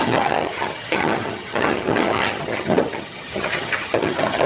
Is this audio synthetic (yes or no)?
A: yes